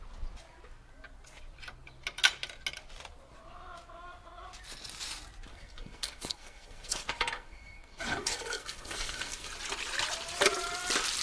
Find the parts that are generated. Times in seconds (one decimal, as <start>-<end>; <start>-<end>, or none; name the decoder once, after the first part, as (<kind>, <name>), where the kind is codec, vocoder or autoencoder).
5.5-9.5 (codec, SNAC)